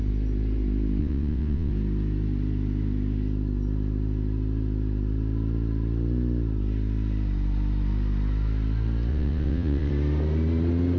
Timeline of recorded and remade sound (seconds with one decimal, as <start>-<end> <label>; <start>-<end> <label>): 0.0-1.0 recorded; 1.0-1.7 remade; 1.7-9.1 recorded; 9.1-9.9 remade; 9.9-11.0 recorded